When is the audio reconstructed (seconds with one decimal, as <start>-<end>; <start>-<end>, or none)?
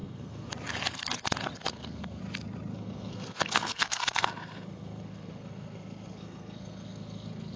0.0-0.5; 1.7-2.2; 2.7-7.6